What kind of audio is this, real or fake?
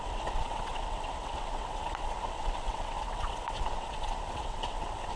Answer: fake